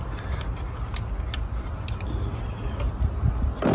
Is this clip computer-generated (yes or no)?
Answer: no